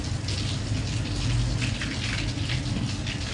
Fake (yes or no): no